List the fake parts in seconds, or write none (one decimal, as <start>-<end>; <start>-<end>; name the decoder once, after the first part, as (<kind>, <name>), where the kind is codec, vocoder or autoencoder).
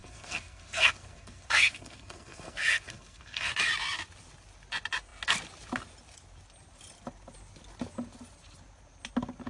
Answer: 0.0-3.5 (codec, SNAC)